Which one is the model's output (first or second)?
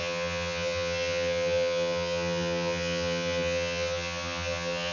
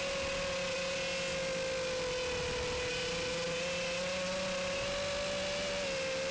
first